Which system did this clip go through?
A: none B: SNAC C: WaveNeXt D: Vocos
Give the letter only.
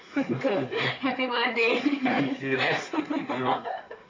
B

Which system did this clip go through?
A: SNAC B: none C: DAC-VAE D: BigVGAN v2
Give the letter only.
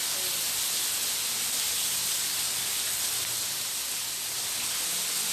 B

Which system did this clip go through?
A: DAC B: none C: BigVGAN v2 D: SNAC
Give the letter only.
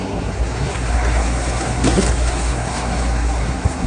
D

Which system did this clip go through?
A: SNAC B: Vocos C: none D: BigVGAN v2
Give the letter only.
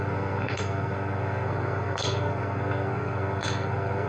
A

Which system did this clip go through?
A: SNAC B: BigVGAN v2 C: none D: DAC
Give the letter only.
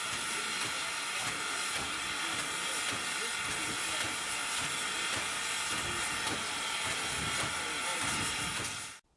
C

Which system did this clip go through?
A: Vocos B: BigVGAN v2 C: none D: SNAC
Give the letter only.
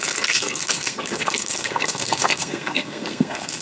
D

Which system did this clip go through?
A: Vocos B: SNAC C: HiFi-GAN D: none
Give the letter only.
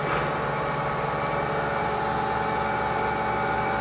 D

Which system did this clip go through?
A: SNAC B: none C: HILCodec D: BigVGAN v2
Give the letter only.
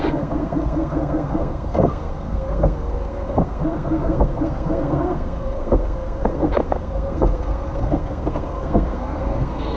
A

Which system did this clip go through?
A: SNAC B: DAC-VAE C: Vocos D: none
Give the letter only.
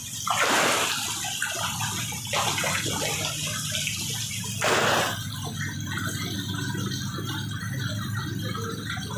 D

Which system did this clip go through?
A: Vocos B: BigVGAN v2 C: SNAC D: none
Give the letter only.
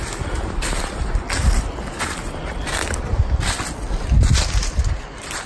D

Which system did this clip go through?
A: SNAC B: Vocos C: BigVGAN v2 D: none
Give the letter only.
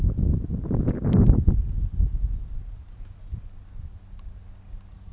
D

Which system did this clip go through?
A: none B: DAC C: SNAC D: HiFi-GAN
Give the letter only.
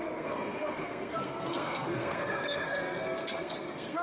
C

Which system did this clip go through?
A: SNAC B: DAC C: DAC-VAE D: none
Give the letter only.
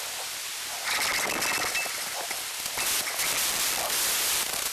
D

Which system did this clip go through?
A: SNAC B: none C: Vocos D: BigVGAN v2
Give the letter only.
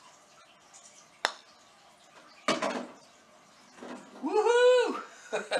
B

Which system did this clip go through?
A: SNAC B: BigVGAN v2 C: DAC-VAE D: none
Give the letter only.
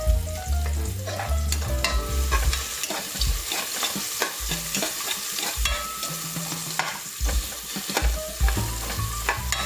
D